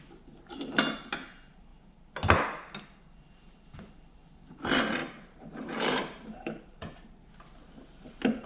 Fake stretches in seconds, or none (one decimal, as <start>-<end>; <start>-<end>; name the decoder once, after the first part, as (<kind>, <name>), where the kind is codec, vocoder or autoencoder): 5.0-7.3 (vocoder, BigVGAN v2)